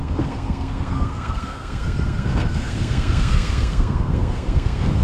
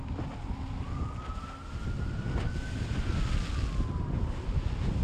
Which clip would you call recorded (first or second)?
second